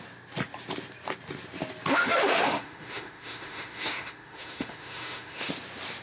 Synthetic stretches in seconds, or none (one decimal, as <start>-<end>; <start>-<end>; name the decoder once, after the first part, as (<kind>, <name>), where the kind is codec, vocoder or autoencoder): 1.9-5.5 (autoencoder, DAC-VAE)